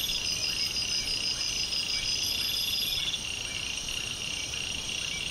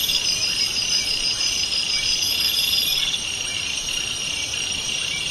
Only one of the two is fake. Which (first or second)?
second